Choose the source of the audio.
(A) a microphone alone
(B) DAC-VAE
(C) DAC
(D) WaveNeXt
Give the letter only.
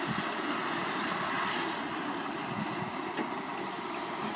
A